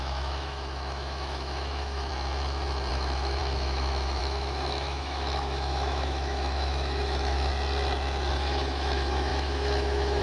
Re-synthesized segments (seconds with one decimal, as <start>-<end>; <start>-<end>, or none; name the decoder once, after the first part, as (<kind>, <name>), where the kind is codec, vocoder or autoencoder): 0.0-2.1 (autoencoder, DAC-VAE); 2.9-7.5; 8.3-10.2